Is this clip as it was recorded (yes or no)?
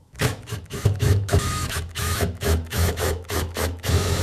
no